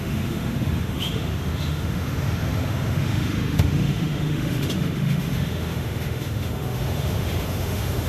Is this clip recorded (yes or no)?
no